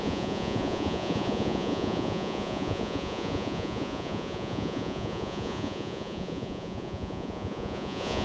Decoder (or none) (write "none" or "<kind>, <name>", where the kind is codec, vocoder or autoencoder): vocoder, Vocos